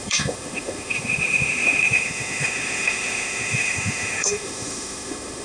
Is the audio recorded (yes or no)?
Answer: no